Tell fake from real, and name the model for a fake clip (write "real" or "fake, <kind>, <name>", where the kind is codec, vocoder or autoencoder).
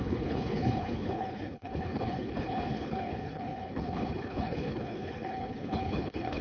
fake, codec, HILCodec